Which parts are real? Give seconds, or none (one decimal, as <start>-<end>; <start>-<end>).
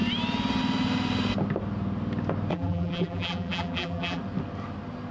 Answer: 0.0-2.5; 4.2-5.1